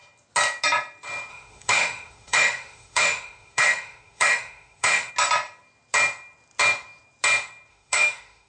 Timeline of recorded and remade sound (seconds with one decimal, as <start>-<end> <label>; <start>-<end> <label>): 0.0-1.3 recorded; 1.3-5.1 remade; 5.1-7.7 recorded; 7.7-8.5 remade